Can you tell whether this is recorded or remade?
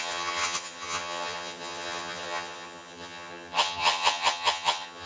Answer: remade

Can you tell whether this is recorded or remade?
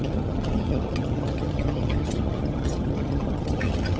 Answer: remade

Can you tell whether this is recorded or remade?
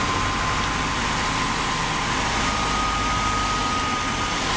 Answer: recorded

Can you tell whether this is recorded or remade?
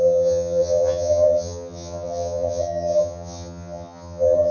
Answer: remade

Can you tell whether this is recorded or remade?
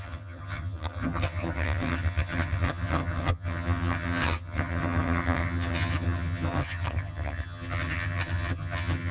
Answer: remade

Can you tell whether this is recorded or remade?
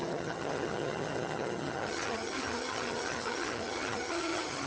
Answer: remade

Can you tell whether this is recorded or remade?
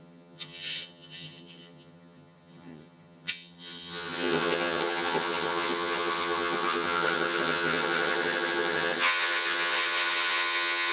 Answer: remade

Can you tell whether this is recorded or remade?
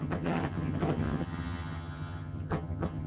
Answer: remade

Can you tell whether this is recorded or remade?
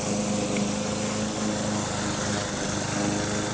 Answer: recorded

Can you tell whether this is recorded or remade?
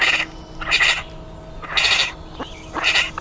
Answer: recorded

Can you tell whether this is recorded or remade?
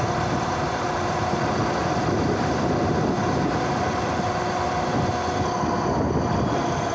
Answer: recorded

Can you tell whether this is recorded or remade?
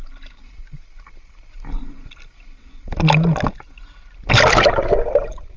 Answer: recorded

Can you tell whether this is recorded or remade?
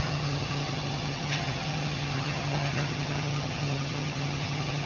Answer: remade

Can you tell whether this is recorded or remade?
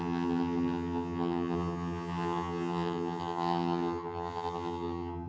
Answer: remade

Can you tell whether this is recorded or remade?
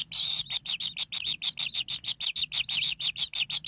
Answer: recorded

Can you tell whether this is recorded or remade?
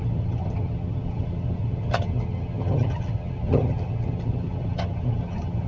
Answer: remade